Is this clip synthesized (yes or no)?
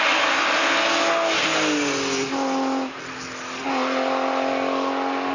no